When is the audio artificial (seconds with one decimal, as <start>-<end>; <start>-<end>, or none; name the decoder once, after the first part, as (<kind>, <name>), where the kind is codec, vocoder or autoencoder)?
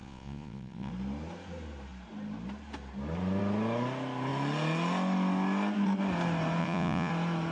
0.0-0.9 (vocoder, Vocos); 6.6-7.1